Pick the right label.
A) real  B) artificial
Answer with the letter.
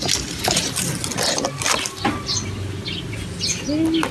A